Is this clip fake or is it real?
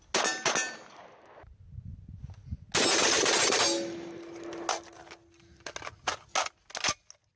real